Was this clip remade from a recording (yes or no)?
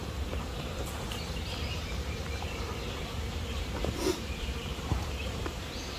yes